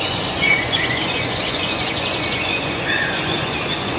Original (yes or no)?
no